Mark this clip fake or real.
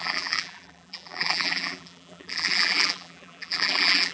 fake